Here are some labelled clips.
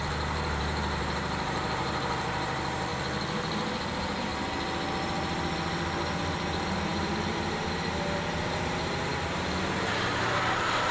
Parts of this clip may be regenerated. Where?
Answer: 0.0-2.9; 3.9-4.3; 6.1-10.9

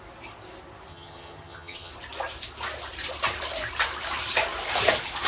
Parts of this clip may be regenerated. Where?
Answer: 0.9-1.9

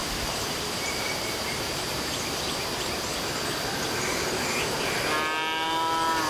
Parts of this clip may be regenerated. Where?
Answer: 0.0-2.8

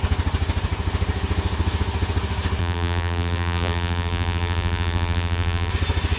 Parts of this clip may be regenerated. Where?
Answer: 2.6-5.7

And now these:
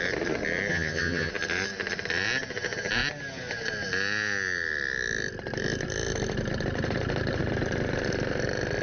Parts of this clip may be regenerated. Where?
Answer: 0.7-1.3

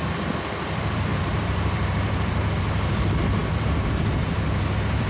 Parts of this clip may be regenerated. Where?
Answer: 0.6-5.1

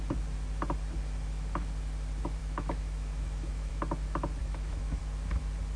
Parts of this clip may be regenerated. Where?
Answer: 2.4-3.7; 4.4-5.0